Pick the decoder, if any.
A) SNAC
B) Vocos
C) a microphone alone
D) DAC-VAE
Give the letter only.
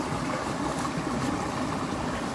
C